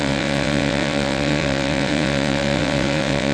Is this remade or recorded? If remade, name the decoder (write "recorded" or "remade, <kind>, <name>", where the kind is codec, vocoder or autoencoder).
remade, vocoder, WaveNeXt